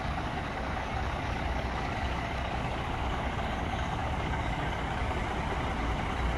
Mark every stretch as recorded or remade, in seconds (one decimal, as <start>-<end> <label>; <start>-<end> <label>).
0.0-5.2 remade; 5.2-6.4 recorded